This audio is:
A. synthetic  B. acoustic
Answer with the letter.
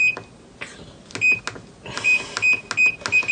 B